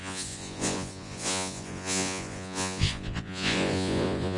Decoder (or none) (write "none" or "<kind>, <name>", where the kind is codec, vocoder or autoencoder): vocoder, Vocos